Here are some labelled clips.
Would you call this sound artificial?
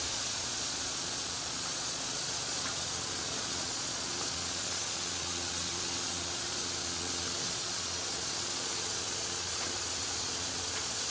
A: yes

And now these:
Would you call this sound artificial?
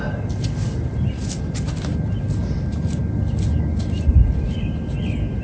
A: no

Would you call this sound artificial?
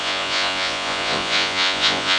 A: yes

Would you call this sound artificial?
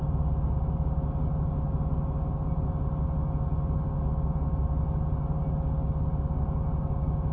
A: no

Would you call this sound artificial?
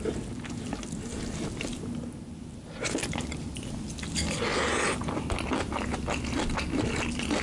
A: no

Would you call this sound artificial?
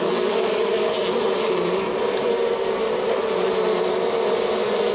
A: no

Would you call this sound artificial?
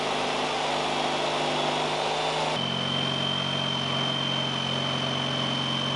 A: no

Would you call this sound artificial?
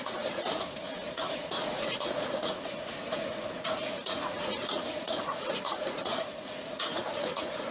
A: yes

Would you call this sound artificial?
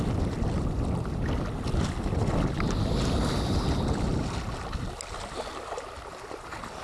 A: no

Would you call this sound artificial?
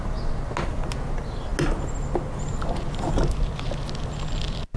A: no